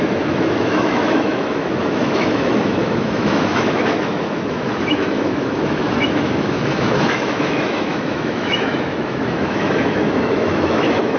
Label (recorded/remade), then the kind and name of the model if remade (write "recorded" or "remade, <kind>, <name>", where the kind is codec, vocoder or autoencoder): remade, autoencoder, DAC-VAE